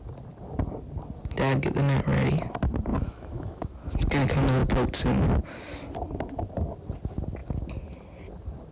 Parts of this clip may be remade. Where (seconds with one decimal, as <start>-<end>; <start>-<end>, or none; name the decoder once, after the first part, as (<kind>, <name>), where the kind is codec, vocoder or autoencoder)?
2.9-3.7 (autoencoder, DAC-VAE)